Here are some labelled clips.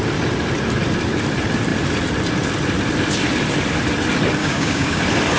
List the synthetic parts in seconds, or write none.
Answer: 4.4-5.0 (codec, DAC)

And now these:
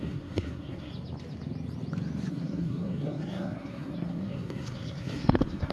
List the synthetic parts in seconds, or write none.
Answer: 0.0-0.9 (codec, SNAC); 2.3-5.7

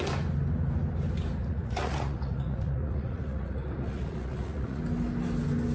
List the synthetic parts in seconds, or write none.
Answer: 1.4-4.8 (vocoder, Vocos)

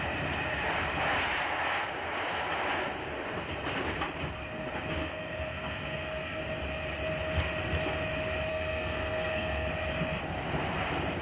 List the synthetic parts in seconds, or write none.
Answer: 5.0-6.4 (codec, SNAC); 8.5-9.7

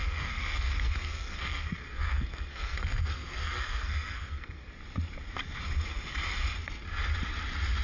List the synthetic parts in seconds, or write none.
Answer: 0.0-4.7 (codec, SNAC)

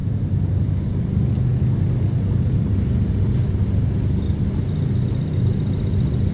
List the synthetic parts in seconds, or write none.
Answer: 0.0-0.6 (vocoder, BigVGAN v2)

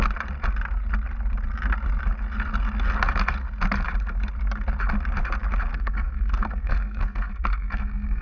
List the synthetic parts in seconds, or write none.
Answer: 5.7-8.2 (codec, SNAC)

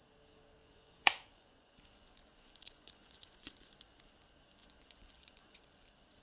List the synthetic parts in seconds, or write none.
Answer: 0.6-3.7 (vocoder, Vocos); 4.6-5.7